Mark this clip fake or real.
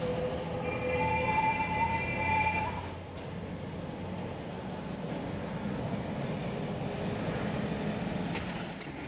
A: real